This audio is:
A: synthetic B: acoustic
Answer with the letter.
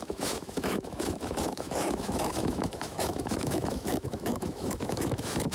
A